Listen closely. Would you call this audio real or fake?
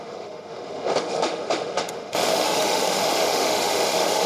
fake